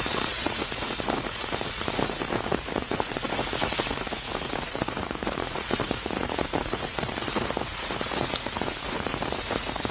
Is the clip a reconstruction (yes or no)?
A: yes